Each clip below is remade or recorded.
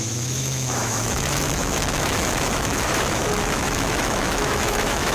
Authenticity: remade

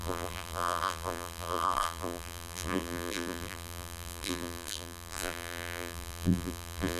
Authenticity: remade